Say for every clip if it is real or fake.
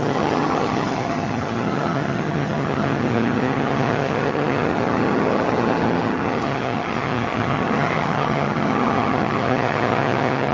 fake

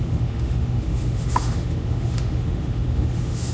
fake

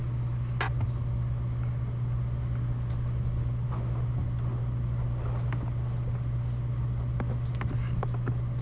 real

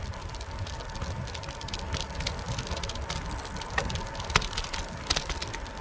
real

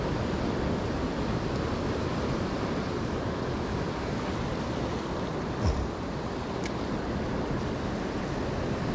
real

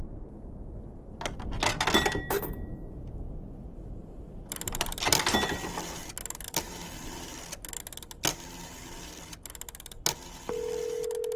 real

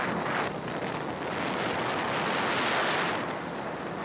real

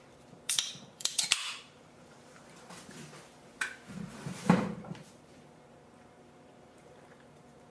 fake